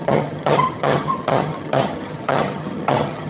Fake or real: fake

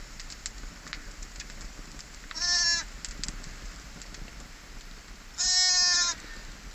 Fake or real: real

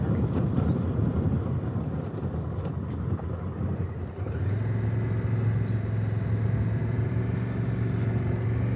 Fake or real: real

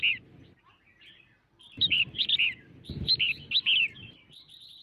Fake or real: real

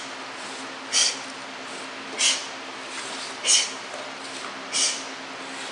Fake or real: real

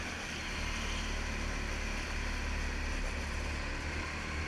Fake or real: real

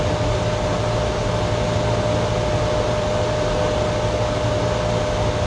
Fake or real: real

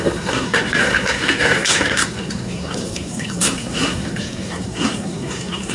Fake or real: fake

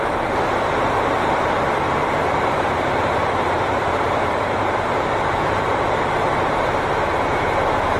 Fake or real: fake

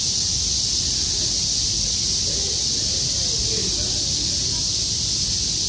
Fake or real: real